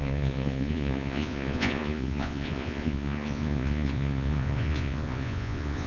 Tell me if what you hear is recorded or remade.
remade